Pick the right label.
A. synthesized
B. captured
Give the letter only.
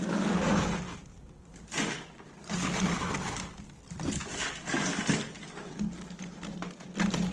B